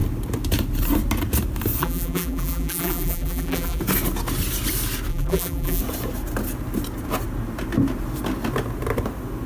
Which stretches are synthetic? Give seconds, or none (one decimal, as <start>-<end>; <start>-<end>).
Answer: 1.8-3.8; 5.1-5.8